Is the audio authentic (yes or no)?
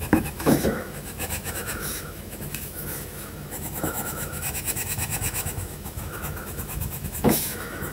no